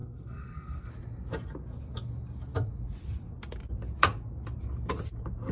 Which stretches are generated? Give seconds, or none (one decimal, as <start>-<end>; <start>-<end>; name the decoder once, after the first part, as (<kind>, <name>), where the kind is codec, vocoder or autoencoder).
0.0-0.9 (codec, SNAC)